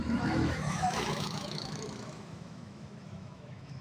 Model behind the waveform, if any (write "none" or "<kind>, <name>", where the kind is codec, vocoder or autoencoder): autoencoder, DAC-VAE